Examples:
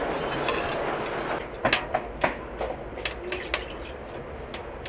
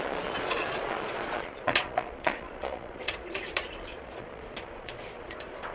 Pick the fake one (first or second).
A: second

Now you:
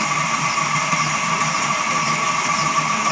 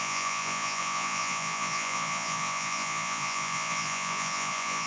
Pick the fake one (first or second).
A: second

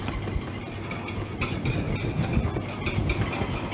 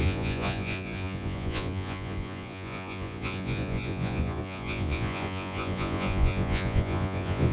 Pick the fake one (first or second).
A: second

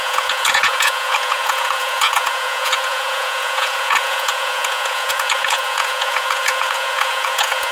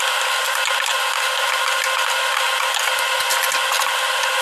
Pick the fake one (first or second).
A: first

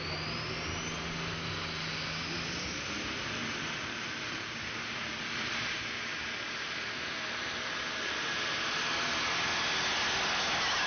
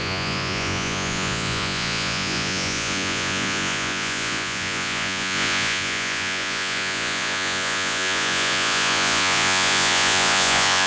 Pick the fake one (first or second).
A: second